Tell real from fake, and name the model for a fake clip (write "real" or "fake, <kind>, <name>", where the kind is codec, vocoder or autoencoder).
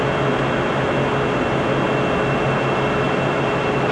real